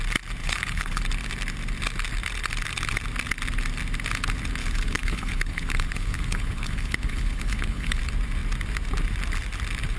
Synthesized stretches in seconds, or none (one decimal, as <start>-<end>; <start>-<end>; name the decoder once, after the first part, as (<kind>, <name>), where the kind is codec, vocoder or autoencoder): 0.4-1.0 (codec, HILCodec); 4.6-8.0